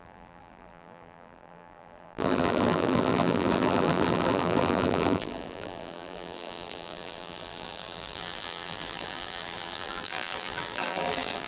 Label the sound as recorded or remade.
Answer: remade